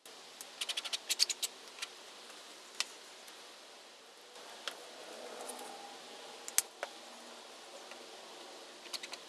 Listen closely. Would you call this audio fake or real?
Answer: real